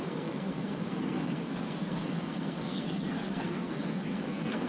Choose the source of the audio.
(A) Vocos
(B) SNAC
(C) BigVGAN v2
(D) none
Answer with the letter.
B